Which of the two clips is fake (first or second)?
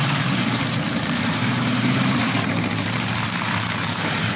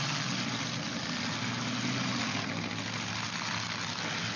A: first